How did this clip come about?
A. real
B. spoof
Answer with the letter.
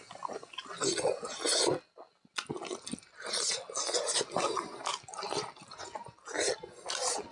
A